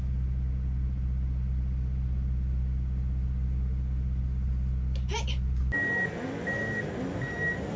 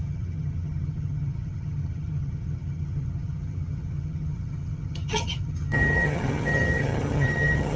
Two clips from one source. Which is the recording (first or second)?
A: first